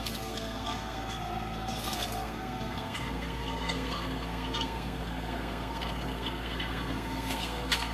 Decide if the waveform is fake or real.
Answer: fake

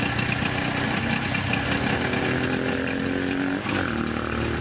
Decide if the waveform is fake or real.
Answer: real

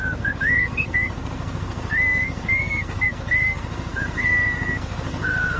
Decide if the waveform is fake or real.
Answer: fake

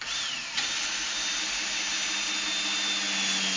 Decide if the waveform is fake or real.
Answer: real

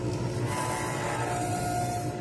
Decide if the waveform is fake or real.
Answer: real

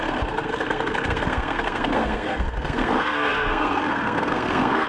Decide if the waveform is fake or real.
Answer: fake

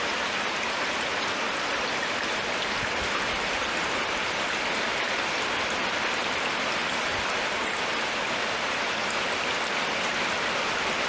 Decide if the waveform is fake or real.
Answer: real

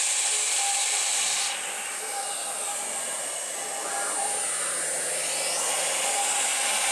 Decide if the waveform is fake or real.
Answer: real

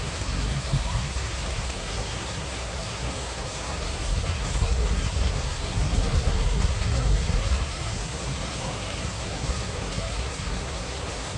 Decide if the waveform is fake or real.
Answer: fake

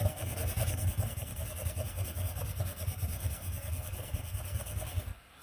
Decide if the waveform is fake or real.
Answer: fake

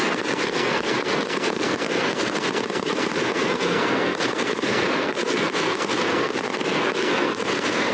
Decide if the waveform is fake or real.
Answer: fake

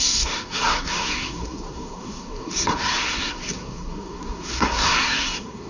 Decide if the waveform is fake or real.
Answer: fake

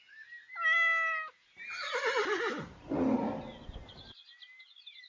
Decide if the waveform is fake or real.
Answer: real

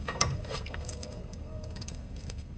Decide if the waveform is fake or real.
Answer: fake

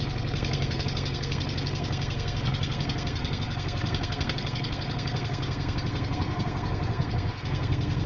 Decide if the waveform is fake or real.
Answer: fake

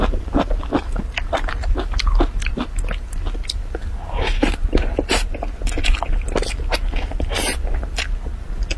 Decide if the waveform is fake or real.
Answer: real